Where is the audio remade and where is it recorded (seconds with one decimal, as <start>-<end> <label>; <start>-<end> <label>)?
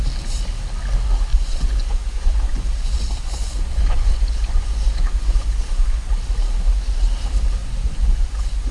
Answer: 0.0-1.3 recorded; 1.3-6.1 remade; 6.1-7.6 recorded; 7.6-8.7 remade